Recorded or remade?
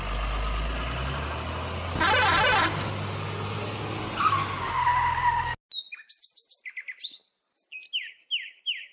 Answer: recorded